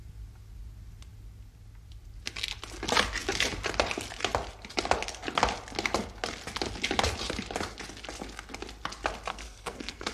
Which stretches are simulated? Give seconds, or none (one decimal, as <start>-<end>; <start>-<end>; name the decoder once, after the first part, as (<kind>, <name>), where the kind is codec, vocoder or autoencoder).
9.3-10.1 (codec, SNAC)